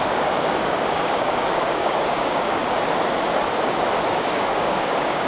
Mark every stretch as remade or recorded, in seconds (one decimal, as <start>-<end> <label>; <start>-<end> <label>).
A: 0.0-2.6 remade; 2.6-4.1 recorded; 4.1-5.3 remade